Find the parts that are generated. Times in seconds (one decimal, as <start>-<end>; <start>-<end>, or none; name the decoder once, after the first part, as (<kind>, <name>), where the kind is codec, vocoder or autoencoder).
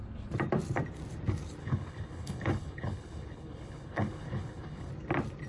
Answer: 1.6-4.9 (codec, HILCodec)